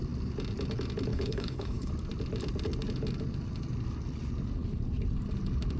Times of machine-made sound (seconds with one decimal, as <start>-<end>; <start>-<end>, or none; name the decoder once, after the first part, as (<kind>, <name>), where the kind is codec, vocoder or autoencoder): 1.1-1.9 (codec, HILCodec)